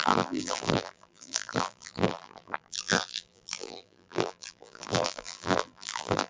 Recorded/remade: remade